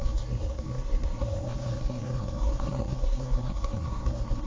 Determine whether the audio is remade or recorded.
remade